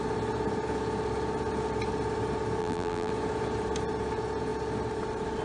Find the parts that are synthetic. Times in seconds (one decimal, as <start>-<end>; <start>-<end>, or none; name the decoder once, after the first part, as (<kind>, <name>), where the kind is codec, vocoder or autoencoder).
2.6-3.1 (vocoder, BigVGAN v2)